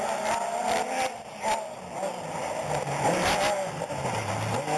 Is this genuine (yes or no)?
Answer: yes